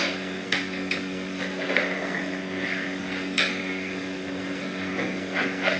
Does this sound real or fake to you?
fake